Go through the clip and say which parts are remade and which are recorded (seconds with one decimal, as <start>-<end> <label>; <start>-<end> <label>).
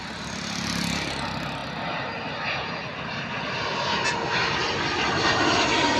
0.0-6.0 recorded